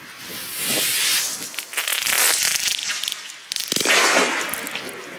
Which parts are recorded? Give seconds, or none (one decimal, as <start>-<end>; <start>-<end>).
0.0-5.2